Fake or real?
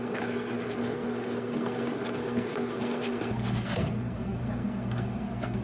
fake